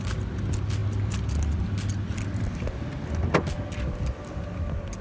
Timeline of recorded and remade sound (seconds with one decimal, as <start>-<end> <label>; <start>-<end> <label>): 0.0-5.0 recorded